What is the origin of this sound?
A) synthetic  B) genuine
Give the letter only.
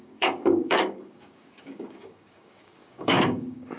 A